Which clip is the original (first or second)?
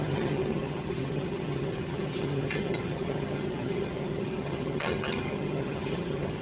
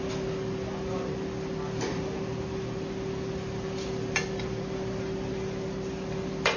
second